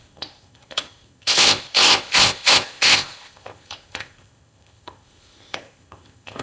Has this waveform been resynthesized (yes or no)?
yes